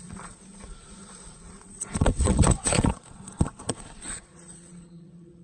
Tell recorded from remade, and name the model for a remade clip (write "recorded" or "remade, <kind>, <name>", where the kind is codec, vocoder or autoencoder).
remade, vocoder, Vocos